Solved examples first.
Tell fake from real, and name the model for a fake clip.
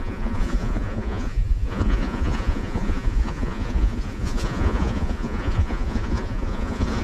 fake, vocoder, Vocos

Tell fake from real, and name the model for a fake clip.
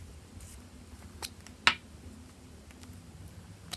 real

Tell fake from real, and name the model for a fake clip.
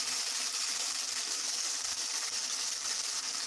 real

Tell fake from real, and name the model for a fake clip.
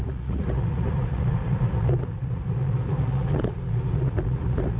fake, vocoder, Vocos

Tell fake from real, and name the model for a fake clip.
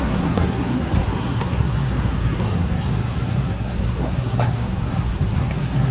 fake, codec, SNAC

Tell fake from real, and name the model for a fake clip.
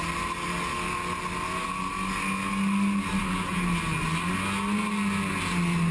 real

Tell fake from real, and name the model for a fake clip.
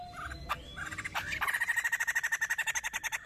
real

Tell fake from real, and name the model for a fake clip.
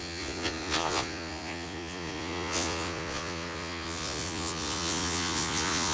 fake, vocoder, Vocos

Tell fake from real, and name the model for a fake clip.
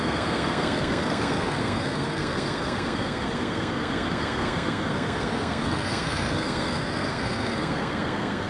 fake, codec, SNAC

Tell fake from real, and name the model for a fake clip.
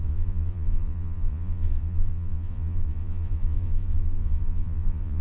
fake, vocoder, Vocos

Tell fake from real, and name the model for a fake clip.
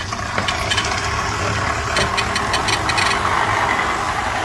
real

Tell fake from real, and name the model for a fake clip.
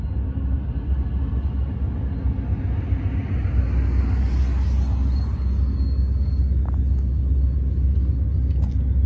real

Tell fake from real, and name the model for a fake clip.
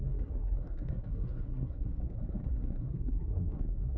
fake, codec, SNAC